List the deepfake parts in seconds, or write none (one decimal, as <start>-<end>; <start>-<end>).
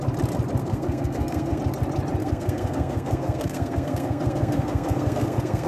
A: 0.6-1.6; 2.2-5.7